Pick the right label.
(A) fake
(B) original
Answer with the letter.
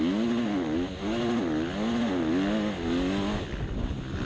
B